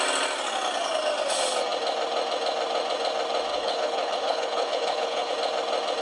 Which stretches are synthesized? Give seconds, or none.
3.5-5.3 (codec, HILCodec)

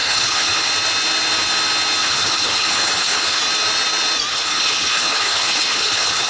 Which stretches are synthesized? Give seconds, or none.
0.0-0.7 (codec, HILCodec); 2.0-3.4; 4.3-6.3

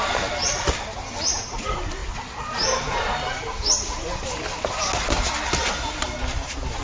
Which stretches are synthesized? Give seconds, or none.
none

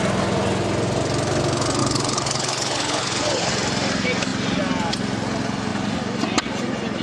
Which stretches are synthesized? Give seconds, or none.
1.8-3.5 (codec, HILCodec)

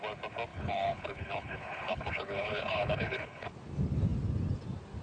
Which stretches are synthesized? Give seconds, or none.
0.5-3.5 (codec, HILCodec)

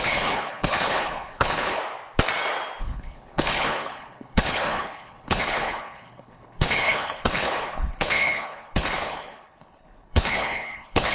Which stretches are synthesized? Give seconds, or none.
0.0-1.8 (codec, HILCodec); 2.8-11.1

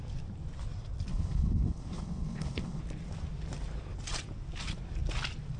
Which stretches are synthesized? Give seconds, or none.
1.1-2.8 (codec, HILCodec)